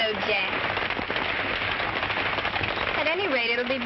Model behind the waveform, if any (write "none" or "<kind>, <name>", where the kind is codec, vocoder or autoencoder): none